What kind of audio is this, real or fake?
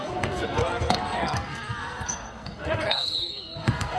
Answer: fake